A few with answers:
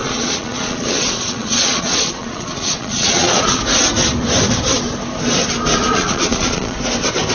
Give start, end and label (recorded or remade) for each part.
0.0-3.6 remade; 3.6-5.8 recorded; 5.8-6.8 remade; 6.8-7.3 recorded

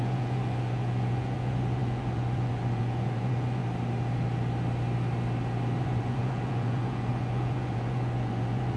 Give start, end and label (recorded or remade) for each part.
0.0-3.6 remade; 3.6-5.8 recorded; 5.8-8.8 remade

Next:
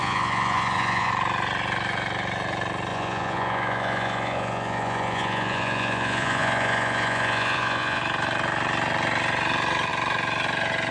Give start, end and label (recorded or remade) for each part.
0.0-1.1 remade; 1.1-2.9 recorded; 2.9-8.0 remade; 8.0-10.9 recorded

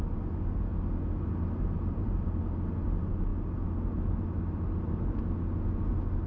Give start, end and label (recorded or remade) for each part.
0.0-6.3 recorded